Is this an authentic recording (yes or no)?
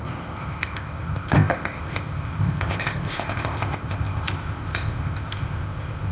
no